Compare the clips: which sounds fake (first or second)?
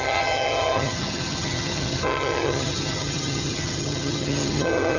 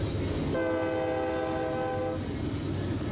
first